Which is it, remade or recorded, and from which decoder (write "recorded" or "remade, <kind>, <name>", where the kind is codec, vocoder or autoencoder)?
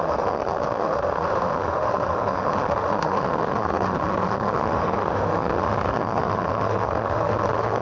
remade, autoencoder, DAC-VAE